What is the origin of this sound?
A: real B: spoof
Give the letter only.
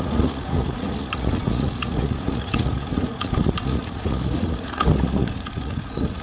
B